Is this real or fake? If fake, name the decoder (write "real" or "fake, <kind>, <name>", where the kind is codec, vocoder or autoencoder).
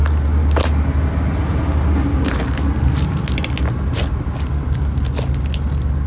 real